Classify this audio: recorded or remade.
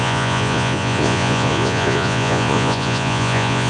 remade